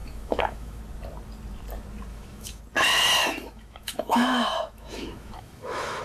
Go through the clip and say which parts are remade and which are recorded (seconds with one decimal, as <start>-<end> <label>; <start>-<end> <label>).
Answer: 0.0-0.8 remade; 0.8-2.1 recorded; 2.1-2.6 remade; 2.6-3.2 recorded; 3.2-6.0 remade